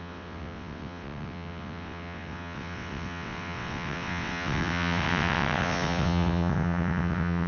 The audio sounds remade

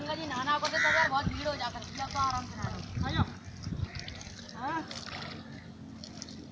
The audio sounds recorded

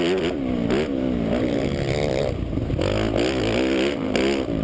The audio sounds recorded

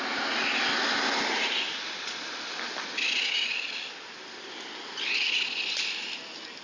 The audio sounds recorded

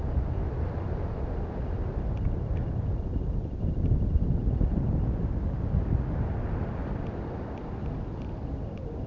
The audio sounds recorded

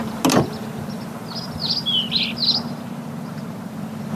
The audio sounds recorded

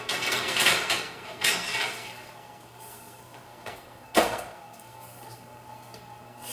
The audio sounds remade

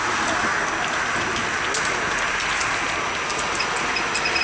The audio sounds recorded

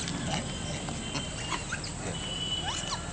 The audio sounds recorded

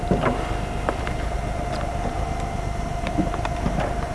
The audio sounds remade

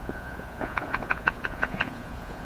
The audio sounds remade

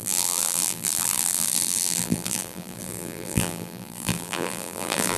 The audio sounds remade